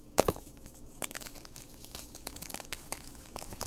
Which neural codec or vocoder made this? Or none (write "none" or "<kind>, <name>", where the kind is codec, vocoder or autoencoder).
codec, DAC